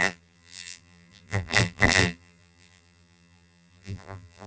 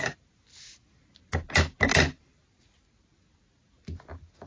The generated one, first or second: first